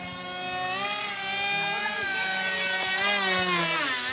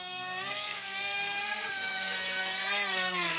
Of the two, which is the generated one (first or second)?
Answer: second